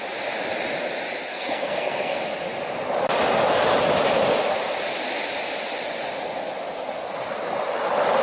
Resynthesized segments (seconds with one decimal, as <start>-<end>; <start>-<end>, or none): 1.3-2.2

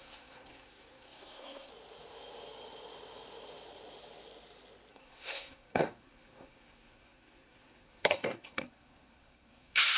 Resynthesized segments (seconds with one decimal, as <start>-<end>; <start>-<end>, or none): 0.0-1.7; 4.9-10.0

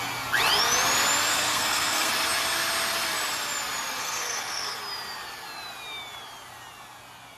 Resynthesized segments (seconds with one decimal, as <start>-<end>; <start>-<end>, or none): 1.3-2.1; 4.0-4.8

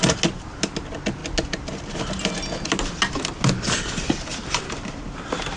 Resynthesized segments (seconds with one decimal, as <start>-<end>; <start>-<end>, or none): none

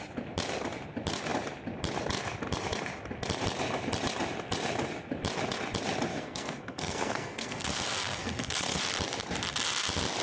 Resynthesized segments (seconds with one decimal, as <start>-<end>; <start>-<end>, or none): 6.1-8.8

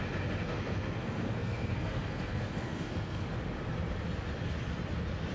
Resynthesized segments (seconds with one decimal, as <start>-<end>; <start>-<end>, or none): 0.4-3.2

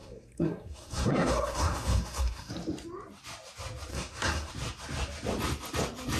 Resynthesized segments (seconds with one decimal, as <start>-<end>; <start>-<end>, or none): 0.0-2.5; 3.9-4.5